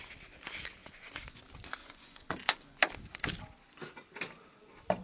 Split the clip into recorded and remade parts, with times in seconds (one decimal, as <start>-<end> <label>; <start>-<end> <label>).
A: 0.0-0.8 recorded; 0.8-1.4 remade; 1.4-1.8 recorded; 1.8-2.8 remade; 2.8-5.0 recorded